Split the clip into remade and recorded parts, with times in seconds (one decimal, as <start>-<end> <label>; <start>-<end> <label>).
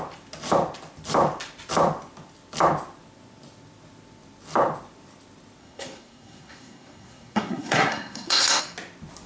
0.0-5.6 recorded; 5.6-8.6 remade; 8.6-9.3 recorded